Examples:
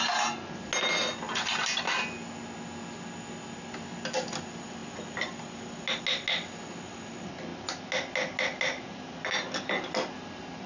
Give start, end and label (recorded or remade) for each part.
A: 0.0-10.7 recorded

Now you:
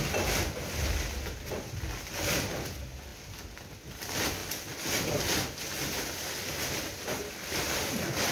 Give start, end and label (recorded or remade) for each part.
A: 0.0-8.3 recorded

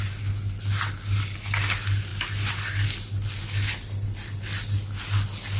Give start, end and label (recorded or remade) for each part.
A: 0.0-5.6 recorded

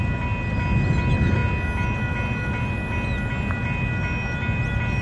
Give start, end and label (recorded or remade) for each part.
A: 0.0-5.0 recorded

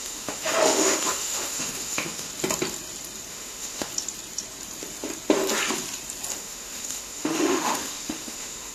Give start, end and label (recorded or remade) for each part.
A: 0.0-2.3 remade; 2.3-3.3 recorded; 3.3-3.9 remade; 3.9-6.3 recorded; 6.3-8.7 remade

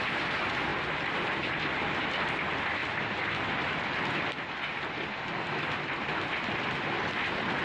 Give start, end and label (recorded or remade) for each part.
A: 0.0-7.6 recorded